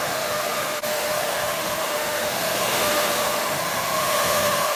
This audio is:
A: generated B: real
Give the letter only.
A